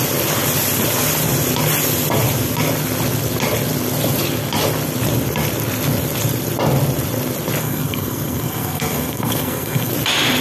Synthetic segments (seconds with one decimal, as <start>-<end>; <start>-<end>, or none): 7.6-9.9